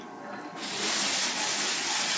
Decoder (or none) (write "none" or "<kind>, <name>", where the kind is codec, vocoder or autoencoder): none